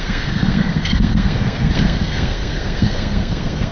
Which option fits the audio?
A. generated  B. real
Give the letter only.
A